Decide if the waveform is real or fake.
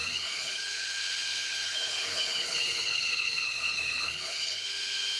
fake